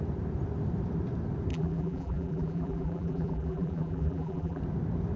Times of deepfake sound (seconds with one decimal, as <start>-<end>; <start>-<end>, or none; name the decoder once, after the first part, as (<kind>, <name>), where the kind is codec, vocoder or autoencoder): 1.5-4.6 (vocoder, BigVGAN v2)